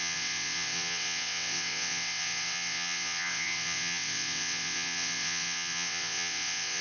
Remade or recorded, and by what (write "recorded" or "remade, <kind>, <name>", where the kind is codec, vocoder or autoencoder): remade, vocoder, WaveNeXt